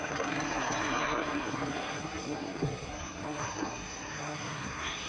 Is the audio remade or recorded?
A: remade